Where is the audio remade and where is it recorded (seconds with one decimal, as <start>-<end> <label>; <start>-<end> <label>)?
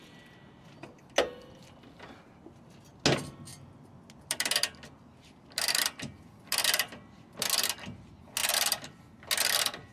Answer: 0.0-3.5 recorded; 3.5-7.4 remade; 7.4-8.4 recorded; 8.4-9.0 remade; 9.0-9.9 recorded